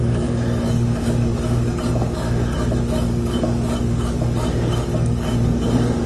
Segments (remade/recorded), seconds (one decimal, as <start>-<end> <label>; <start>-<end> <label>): 0.0-6.1 remade